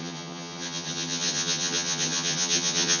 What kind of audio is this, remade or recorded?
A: remade